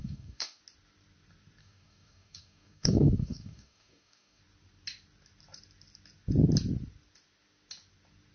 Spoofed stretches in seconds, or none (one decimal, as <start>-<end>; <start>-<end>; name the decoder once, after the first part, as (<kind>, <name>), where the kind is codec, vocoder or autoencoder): 0.0-0.6 (codec, DAC); 1.6-4.4

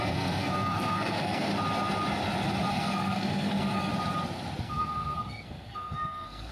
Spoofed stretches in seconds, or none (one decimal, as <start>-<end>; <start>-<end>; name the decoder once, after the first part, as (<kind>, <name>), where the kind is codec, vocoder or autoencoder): 0.0-1.5 (codec, SNAC); 2.7-3.9; 4.6-6.5

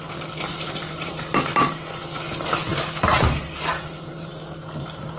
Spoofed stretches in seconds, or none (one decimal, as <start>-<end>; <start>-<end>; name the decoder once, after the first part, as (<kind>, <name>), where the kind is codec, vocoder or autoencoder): 0.5-1.1 (vocoder, BigVGAN v2); 1.5-2.0; 2.7-4.3

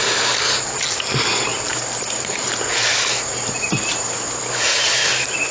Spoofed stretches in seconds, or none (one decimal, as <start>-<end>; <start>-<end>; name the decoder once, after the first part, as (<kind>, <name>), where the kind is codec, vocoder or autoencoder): 1.5-2.6 (vocoder, BigVGAN v2)

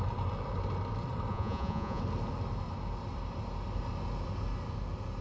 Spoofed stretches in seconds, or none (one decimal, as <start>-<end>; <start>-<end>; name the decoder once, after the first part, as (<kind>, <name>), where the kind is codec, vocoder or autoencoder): 1.3-2.0 (vocoder, Vocos)

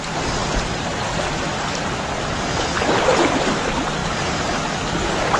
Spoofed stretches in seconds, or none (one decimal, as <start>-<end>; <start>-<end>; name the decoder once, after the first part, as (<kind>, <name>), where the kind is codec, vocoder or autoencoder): 0.4-3.6 (vocoder, BigVGAN v2); 4.0-4.7

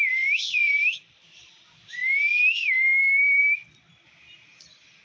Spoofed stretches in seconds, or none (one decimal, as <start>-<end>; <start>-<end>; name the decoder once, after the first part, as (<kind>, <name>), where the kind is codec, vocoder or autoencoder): 0.0-2.0 (vocoder, BigVGAN v2); 3.4-5.0

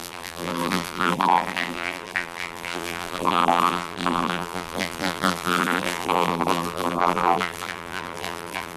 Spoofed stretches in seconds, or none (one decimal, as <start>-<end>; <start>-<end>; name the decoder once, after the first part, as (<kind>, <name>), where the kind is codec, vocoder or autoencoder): 0.0-8.8 (vocoder, BigVGAN v2)